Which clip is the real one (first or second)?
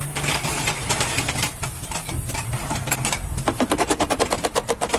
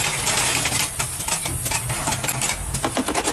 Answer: second